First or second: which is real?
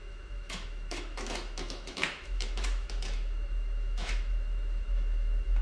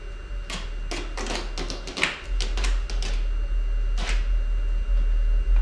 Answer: second